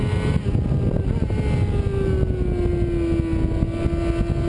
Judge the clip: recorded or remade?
recorded